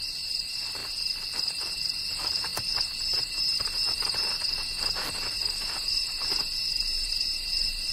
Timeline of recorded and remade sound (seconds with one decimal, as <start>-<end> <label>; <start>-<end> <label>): 0.0-0.8 remade; 0.8-1.3 recorded; 1.3-7.9 remade